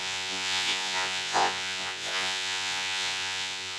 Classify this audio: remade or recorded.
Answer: remade